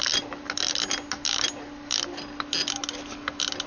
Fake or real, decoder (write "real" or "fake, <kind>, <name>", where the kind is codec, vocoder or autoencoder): real